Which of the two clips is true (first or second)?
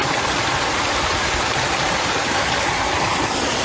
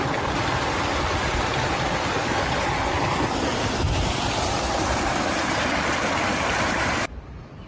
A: second